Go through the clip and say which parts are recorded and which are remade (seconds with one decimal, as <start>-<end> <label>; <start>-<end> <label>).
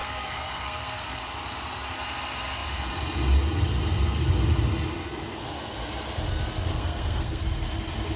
0.0-1.2 remade; 1.2-6.7 recorded; 6.7-7.4 remade; 7.4-8.2 recorded